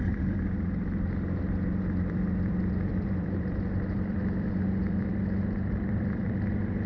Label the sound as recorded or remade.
remade